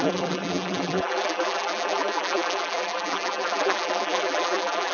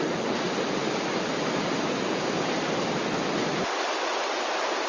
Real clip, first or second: second